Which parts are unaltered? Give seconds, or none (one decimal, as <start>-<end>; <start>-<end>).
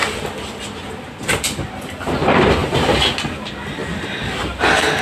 0.0-5.0